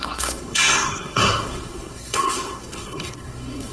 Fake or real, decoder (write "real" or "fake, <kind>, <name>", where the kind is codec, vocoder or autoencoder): fake, codec, SNAC